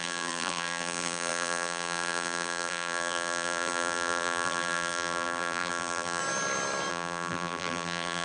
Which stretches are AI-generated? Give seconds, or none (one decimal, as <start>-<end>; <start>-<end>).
0.0-6.2; 6.9-8.2